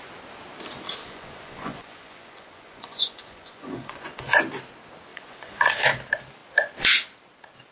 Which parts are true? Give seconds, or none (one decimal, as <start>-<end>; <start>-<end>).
0.0-1.0; 4.4-5.1; 5.7-7.7